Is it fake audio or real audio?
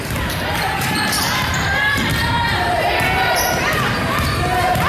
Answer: fake